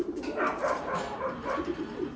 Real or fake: fake